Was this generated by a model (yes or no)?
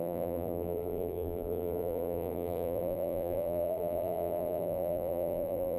yes